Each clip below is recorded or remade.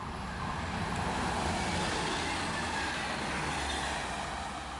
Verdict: recorded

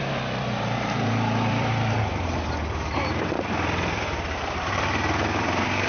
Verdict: remade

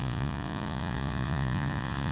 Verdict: remade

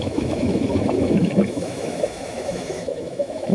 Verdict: remade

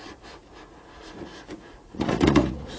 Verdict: remade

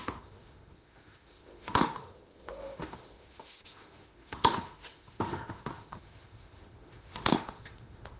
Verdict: remade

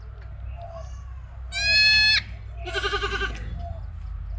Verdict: recorded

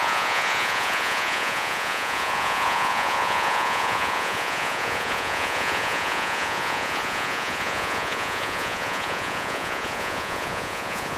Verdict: remade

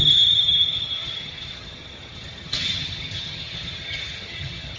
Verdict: remade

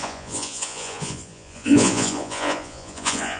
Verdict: remade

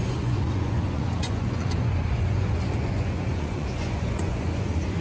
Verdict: remade